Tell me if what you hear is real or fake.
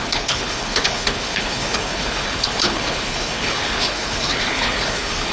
fake